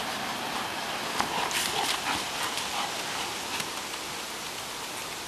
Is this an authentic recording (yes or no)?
no